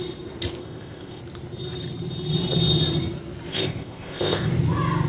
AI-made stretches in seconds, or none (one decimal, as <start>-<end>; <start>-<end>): 0.6-1.2; 3.5-4.5